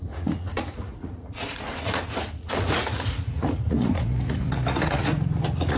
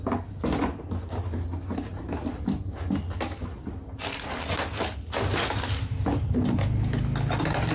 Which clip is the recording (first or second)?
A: second